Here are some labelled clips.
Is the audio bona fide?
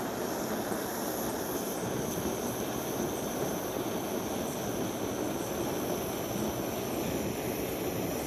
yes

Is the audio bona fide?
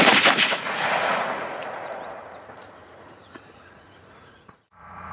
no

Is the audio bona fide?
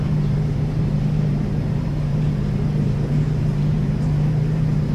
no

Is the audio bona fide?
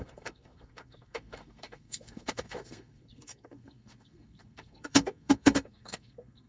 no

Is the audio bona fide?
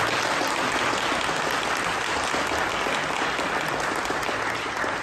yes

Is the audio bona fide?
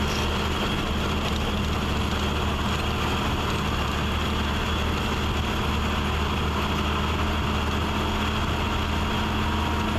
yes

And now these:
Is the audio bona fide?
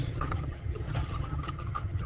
no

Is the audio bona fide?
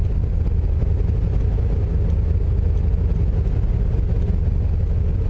yes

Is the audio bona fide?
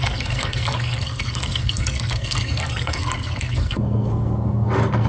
no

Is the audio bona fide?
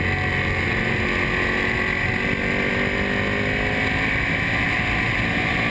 yes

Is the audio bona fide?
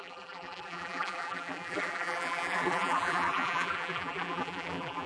no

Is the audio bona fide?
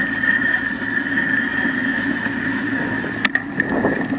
yes